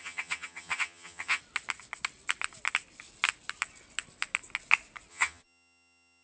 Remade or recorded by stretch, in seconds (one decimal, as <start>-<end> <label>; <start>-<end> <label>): 0.0-1.4 remade; 1.4-5.1 recorded; 5.1-6.2 remade